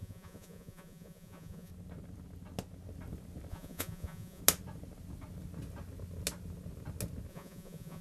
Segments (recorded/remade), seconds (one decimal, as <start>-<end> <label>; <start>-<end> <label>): 0.0-1.7 remade; 1.7-3.5 recorded; 3.5-4.4 remade; 4.4-7.3 recorded; 7.3-8.0 remade